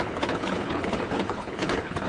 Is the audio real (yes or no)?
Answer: no